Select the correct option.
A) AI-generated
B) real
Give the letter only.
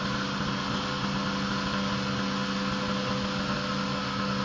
B